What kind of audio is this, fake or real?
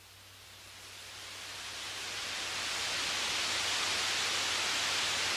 real